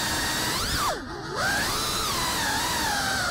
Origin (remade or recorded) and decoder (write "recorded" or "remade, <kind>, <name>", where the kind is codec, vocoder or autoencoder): recorded